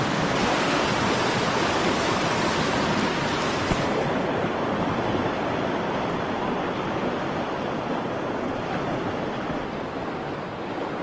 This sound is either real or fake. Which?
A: real